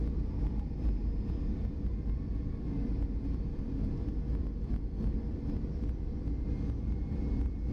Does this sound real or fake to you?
real